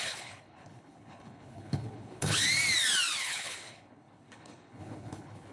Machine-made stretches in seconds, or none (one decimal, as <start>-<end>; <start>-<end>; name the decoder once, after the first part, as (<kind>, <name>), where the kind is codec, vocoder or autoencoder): 0.0-2.4 (codec, HILCodec); 3.2-5.5